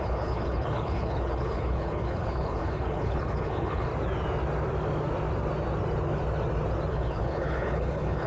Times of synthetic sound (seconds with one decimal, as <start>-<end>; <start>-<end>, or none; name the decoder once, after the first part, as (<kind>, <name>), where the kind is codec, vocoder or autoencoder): 0.0-3.9 (codec, HILCodec); 6.9-8.3